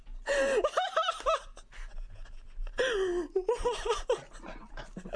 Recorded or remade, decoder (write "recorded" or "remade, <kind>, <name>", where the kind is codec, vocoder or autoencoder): recorded